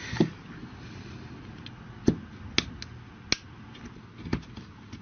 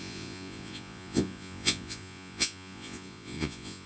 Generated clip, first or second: second